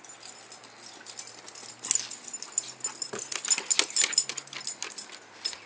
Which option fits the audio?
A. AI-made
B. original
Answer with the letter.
B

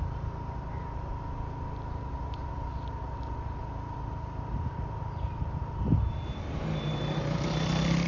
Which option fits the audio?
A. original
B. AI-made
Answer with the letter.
A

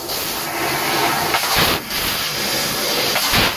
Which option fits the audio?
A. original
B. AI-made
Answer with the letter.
A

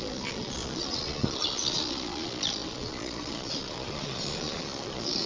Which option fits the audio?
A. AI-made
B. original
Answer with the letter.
A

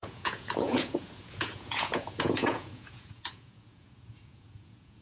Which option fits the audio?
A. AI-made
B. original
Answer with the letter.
A